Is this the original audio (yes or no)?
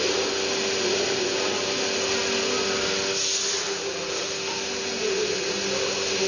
yes